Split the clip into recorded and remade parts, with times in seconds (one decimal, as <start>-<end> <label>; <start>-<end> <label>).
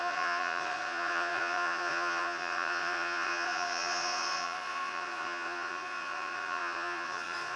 0.0-7.6 remade